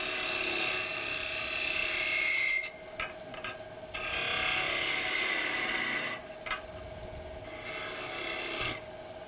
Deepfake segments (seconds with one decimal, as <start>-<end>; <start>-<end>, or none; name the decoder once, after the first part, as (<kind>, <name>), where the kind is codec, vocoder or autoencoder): none